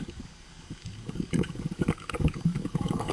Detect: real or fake fake